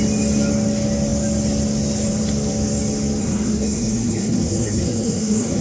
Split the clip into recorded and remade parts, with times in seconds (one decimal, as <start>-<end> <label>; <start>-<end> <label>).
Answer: 0.0-3.2 recorded; 3.2-5.6 remade